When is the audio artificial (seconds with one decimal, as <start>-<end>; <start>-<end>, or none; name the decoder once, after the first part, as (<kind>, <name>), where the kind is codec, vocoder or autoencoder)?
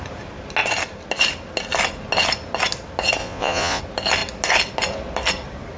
3.2-3.8 (vocoder, Vocos)